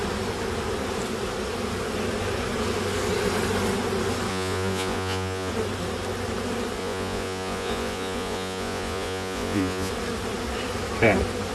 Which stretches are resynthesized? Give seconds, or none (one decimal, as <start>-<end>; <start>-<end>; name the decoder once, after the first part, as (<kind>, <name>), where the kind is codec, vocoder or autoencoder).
4.3-5.5 (vocoder, Vocos); 6.8-9.9